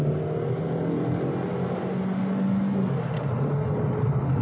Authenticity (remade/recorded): recorded